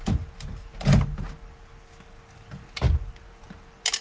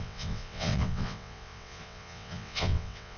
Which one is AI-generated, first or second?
second